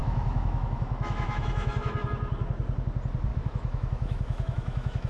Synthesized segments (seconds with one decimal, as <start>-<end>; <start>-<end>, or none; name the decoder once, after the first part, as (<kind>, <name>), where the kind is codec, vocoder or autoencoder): 0.0-2.0 (autoencoder, DAC-VAE); 3.3-5.1